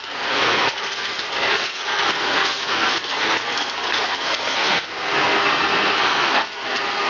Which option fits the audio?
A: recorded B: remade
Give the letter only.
B